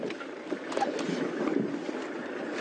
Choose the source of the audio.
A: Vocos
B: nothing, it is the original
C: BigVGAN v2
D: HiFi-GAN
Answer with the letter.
B